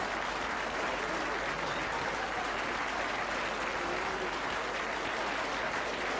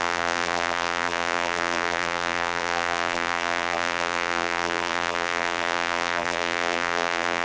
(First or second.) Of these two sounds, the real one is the first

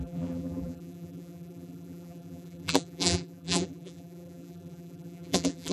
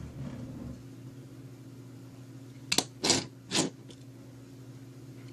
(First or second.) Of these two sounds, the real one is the second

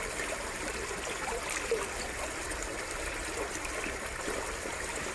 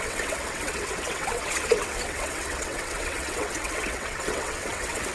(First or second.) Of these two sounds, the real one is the first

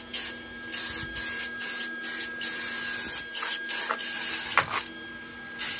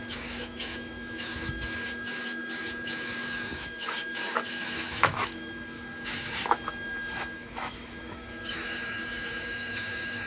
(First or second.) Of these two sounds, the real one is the first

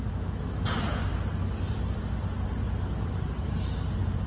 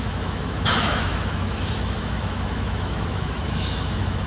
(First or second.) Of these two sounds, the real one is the first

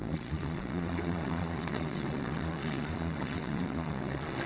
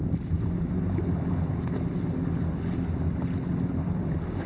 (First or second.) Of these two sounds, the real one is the second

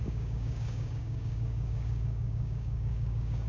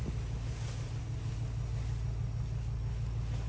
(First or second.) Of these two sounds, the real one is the second